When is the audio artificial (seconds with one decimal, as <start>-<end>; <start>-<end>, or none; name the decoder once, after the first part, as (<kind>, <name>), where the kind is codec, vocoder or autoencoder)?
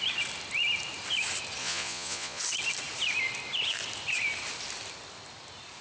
1.6-2.4 (vocoder, Vocos)